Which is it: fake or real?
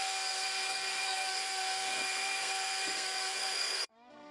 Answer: fake